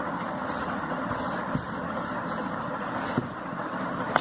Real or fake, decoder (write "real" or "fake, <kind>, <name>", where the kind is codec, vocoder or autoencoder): real